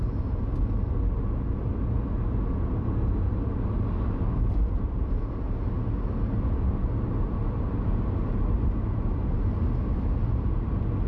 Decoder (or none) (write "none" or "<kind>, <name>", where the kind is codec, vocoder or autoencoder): none